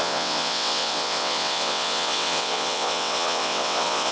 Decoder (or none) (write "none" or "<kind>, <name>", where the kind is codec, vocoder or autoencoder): vocoder, WaveNeXt